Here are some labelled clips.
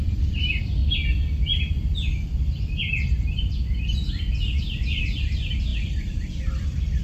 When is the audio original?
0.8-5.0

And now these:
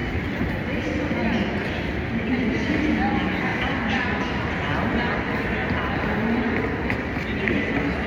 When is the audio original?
0.0-3.5; 4.2-8.1

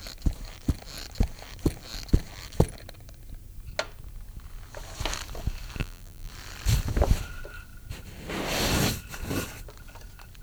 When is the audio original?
0.0-5.8; 6.3-10.4

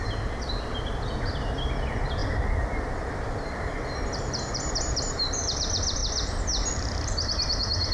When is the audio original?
6.0-6.7

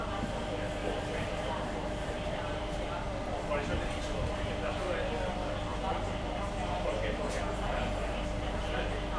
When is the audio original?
0.0-0.8; 3.1-5.7; 8.6-9.2

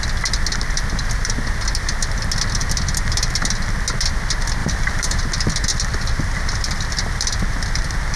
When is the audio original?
0.0-4.6; 5.2-5.7; 7.4-8.2

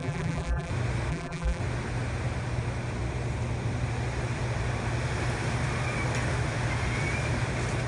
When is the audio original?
0.7-1.1; 1.6-7.9